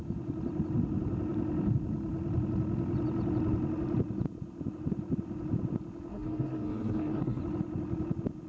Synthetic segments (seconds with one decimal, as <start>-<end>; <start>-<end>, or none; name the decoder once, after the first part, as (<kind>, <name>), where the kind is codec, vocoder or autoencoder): 6.1-7.4 (codec, SNAC)

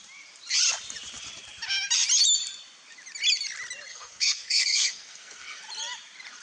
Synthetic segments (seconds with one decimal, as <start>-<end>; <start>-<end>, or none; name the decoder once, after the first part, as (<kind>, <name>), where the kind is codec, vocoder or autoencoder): 3.9-5.6 (codec, SNAC)

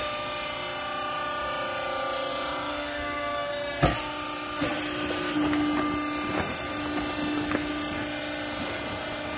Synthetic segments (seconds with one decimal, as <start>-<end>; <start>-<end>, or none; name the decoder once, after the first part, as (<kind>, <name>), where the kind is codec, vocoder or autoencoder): 2.7-3.5 (codec, SNAC)

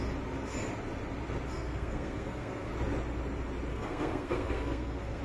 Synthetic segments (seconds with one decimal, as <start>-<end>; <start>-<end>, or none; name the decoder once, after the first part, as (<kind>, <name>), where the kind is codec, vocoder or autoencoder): 1.5-2.7 (codec, SNAC); 3.7-5.2

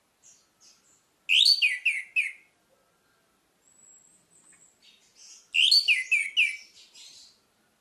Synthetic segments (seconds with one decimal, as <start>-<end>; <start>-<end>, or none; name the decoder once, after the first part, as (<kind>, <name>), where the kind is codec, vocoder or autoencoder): none

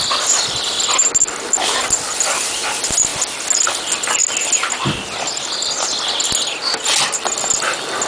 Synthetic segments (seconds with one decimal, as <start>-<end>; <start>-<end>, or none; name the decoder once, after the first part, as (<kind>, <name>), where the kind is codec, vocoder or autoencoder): none

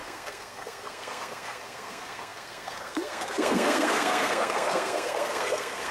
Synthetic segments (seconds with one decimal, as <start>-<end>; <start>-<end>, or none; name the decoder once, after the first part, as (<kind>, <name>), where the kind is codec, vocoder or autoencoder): 0.0-5.9 (codec, SNAC)